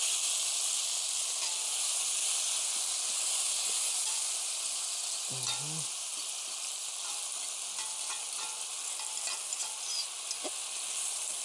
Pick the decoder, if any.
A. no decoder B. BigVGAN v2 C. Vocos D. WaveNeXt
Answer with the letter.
A